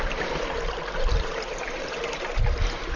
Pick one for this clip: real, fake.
real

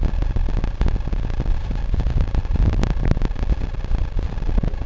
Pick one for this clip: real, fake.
real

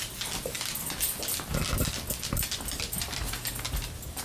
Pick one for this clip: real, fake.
real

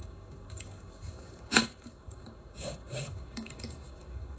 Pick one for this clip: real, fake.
fake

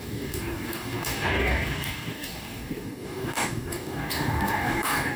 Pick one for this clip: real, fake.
fake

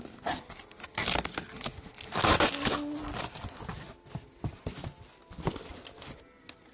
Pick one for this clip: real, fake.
real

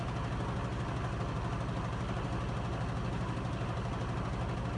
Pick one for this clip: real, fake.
real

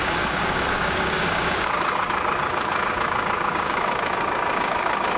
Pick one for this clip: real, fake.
fake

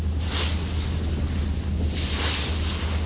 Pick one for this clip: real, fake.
real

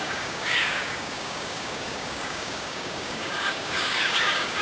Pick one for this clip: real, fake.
fake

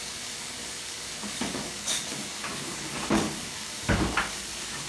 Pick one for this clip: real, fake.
fake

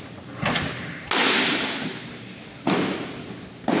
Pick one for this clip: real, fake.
real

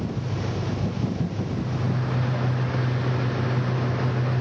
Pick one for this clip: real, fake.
real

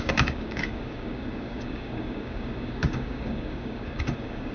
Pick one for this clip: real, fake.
fake